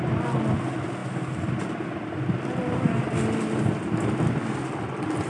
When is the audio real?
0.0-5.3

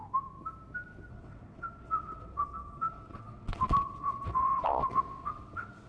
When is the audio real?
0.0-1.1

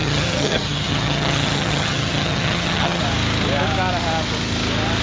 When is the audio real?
3.0-5.0